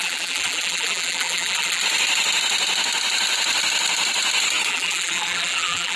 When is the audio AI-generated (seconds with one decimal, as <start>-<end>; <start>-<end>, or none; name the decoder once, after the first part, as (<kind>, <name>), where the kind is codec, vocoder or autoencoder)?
0.0-1.8 (vocoder, BigVGAN v2); 4.7-6.0